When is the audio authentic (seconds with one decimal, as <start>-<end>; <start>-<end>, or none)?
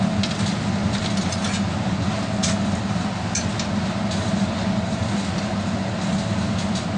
0.0-7.0